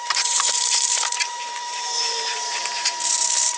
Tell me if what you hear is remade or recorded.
remade